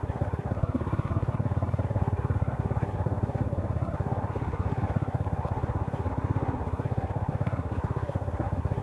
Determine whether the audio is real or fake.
fake